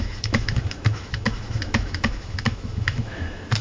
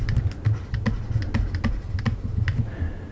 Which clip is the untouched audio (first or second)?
second